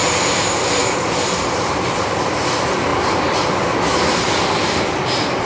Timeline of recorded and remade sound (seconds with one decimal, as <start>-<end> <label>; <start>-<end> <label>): 0.0-5.5 remade